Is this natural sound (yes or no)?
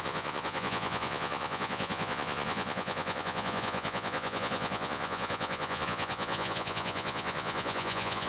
no